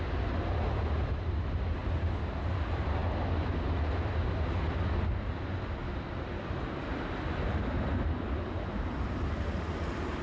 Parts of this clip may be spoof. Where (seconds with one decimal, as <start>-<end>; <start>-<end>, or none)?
none